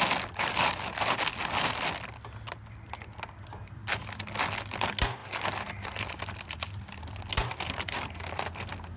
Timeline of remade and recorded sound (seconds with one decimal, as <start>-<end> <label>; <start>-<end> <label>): 0.0-9.0 recorded